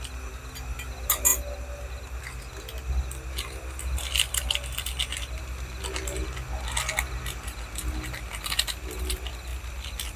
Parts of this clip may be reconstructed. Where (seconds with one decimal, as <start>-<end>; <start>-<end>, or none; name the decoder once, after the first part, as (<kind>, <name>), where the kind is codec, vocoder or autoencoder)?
none

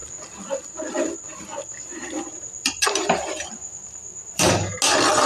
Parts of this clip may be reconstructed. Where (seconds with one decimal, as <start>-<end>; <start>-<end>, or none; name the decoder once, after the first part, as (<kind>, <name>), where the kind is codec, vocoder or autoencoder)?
1.3-4.5 (vocoder, BigVGAN v2)